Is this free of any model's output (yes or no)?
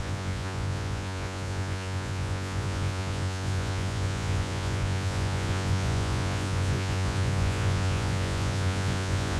no